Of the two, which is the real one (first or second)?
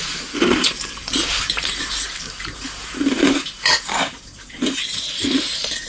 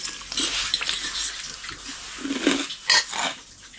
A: second